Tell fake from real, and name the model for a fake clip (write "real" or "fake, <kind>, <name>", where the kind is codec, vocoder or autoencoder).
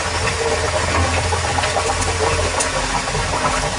real